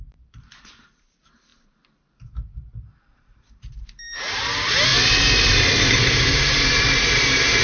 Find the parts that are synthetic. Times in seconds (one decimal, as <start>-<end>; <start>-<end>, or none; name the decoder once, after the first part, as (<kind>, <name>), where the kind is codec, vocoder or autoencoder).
0.0-7.6 (vocoder, BigVGAN v2)